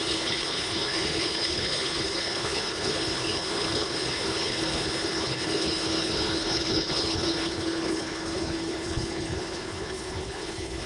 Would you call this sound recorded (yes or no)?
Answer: no